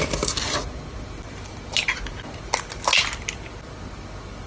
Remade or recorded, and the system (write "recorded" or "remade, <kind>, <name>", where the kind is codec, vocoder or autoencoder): recorded